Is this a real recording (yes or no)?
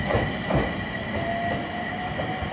yes